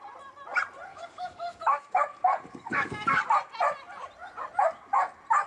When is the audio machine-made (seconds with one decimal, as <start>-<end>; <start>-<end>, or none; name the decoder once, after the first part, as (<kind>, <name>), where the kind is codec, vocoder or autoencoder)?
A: 0.9-3.2 (codec, DAC)